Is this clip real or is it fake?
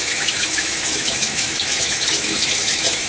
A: fake